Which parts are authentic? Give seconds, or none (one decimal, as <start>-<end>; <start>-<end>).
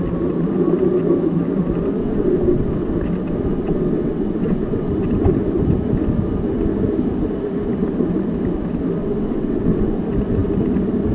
0.0-2.0; 2.9-3.5; 4.9-9.0; 10.0-11.1